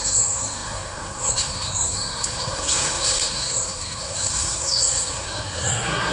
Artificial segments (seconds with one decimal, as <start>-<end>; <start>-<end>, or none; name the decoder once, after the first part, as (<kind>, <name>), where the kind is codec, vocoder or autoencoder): 0.0-6.1 (codec, SNAC)